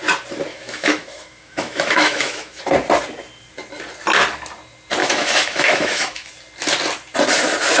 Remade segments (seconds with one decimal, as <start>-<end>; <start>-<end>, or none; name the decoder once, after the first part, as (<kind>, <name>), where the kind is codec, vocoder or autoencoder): 0.5-2.6 (autoencoder, DAC-VAE); 5.0-6.3